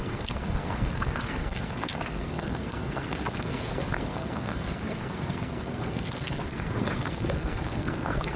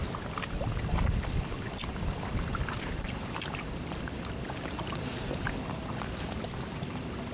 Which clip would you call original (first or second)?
second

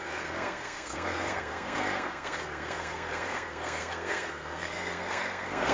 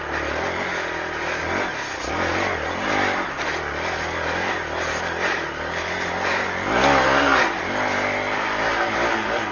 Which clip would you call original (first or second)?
second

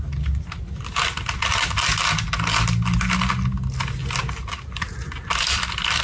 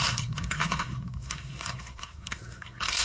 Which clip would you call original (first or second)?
first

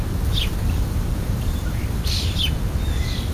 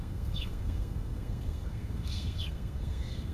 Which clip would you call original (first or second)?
first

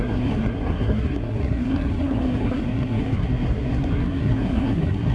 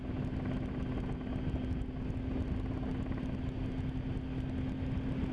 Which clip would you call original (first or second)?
second